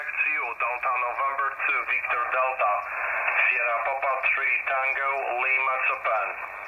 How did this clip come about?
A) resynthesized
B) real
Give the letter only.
B